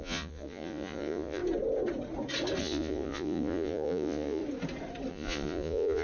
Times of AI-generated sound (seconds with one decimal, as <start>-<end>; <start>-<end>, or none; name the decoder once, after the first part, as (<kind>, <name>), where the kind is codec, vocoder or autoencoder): 0.0-1.4 (vocoder, Vocos); 2.6-4.4; 5.1-6.0